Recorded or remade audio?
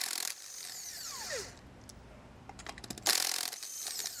recorded